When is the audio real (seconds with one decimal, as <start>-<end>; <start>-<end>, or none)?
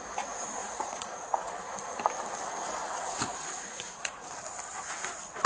0.0-0.6; 1.5-2.8; 4.3-5.5